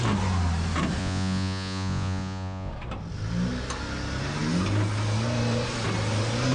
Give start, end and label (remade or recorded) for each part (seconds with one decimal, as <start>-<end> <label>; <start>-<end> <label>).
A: 0.0-1.0 recorded; 1.0-2.7 remade; 2.7-6.5 recorded